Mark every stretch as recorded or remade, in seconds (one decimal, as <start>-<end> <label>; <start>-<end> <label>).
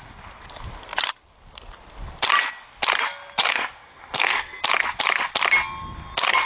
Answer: 0.0-3.4 recorded; 3.4-4.6 remade; 4.6-6.5 recorded